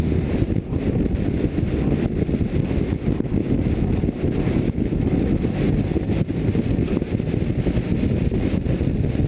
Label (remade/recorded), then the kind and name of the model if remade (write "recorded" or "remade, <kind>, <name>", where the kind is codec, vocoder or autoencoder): recorded